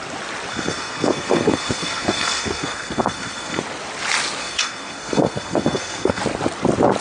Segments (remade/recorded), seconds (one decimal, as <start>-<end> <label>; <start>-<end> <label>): 0.0-0.5 recorded; 0.5-3.6 remade; 3.6-4.4 recorded; 4.4-6.2 remade; 6.2-7.0 recorded

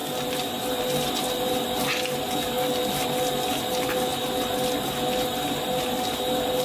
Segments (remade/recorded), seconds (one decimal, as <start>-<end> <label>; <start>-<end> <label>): 0.0-6.6 recorded

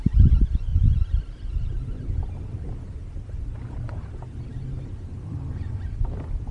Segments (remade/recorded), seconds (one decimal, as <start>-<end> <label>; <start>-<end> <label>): 0.0-0.7 recorded; 0.7-1.2 remade; 1.2-6.5 recorded

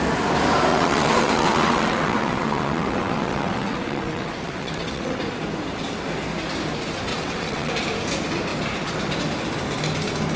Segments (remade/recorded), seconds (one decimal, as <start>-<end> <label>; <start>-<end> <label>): 0.0-0.7 recorded; 0.7-5.2 remade; 5.2-7.1 recorded; 7.1-7.7 remade; 7.7-10.4 recorded

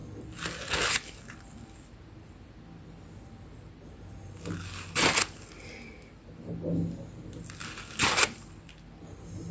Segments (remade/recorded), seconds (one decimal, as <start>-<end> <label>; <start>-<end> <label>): 0.0-9.5 recorded